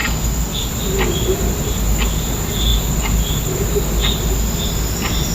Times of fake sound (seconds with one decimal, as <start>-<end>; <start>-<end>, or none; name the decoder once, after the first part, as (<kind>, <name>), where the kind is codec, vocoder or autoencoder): 0.0-0.7 (codec, DAC)

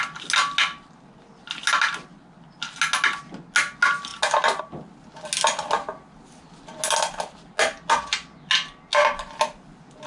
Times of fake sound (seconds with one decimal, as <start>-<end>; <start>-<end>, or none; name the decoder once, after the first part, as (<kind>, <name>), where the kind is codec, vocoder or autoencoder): none